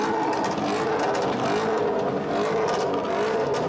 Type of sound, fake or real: real